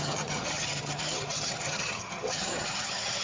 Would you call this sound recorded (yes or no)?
no